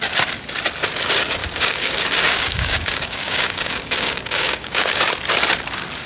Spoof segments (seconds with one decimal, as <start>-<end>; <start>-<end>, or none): 1.4-5.1